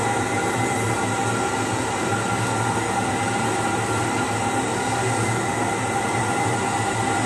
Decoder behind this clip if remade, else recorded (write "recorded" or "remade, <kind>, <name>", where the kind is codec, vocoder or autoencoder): recorded